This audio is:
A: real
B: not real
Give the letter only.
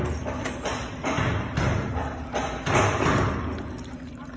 A